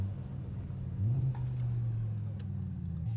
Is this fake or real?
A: real